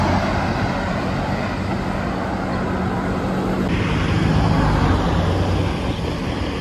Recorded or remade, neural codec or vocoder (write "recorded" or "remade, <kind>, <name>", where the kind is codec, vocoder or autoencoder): recorded